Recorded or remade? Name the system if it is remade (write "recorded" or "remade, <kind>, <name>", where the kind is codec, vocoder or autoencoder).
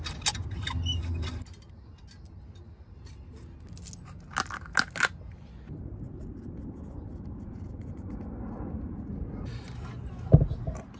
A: recorded